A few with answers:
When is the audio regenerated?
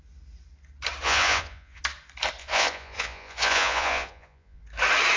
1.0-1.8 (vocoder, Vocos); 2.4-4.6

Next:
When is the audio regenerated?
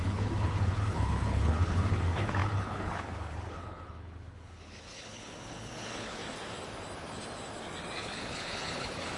0.0-6.2 (codec, HILCodec); 8.0-9.2